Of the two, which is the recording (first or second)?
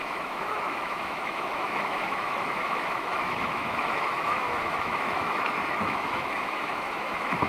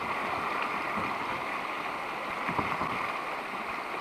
second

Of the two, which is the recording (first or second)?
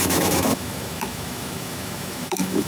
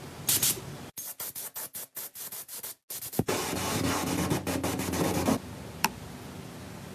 second